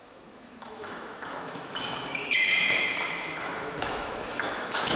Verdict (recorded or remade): remade